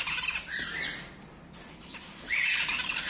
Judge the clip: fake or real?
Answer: real